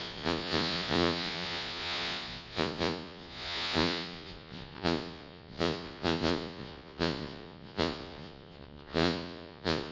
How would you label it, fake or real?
fake